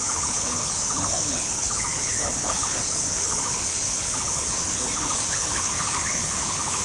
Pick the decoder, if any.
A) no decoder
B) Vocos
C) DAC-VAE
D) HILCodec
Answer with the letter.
D